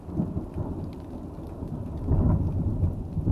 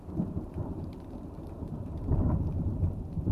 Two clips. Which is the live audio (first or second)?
first